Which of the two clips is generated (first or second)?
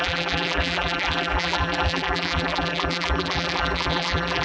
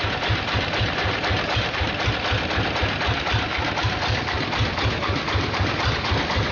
first